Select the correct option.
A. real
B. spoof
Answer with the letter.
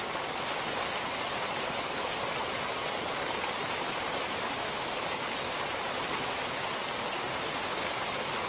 A